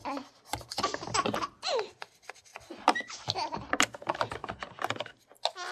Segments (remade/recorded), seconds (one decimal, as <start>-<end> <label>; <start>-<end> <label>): 0.0-5.7 recorded